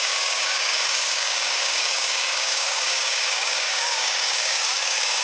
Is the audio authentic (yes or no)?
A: no